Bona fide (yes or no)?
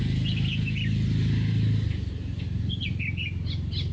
yes